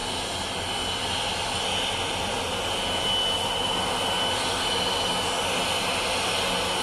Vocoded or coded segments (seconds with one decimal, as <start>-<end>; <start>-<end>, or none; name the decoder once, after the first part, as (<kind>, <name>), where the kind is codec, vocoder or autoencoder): none